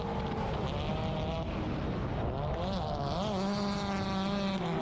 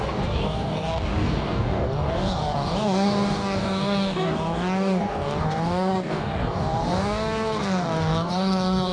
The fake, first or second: second